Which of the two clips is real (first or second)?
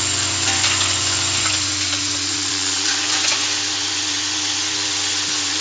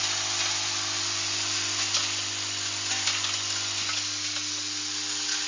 second